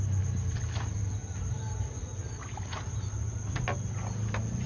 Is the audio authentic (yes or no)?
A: yes